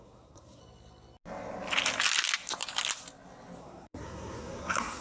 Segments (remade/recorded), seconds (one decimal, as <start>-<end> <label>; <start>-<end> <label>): 0.0-0.6 remade; 0.6-3.6 recorded; 3.6-5.0 remade